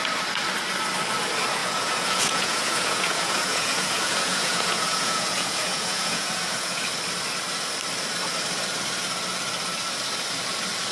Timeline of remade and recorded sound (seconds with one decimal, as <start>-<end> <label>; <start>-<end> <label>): 0.0-1.6 recorded; 1.6-6.8 remade; 6.8-10.9 recorded